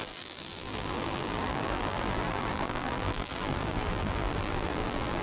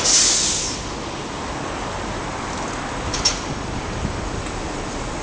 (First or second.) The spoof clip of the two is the first